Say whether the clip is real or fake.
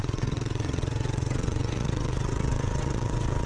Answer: fake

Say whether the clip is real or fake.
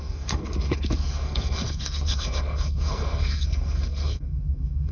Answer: fake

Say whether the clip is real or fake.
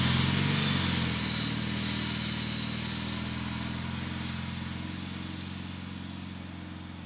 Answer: real